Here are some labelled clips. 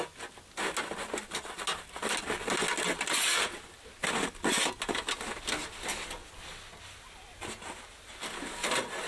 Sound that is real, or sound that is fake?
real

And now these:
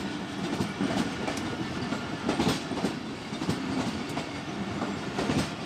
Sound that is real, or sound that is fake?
fake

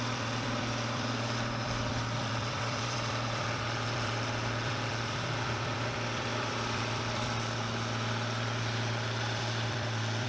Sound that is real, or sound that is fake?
fake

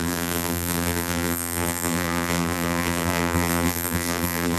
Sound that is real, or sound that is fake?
fake